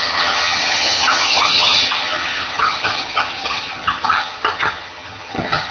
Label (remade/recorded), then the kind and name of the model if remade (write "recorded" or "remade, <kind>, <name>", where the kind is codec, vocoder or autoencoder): remade, vocoder, HiFi-GAN